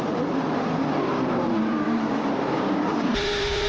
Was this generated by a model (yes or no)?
yes